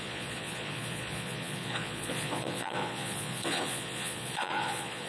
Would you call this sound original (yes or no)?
no